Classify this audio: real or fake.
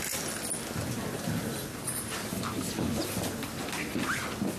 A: real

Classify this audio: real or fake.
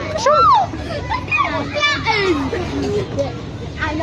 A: real